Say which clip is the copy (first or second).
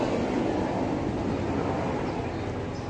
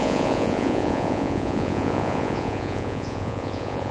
second